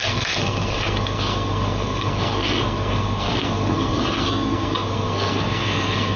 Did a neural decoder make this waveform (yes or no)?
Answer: yes